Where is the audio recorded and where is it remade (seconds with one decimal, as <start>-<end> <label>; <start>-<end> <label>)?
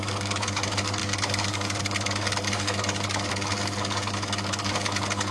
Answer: 0.0-5.3 remade